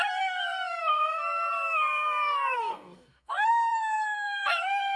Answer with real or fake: fake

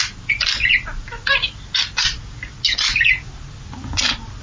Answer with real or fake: real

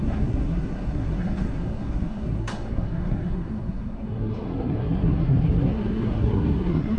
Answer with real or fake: fake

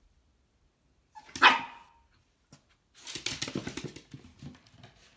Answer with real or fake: real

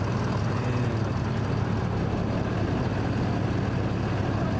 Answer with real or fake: real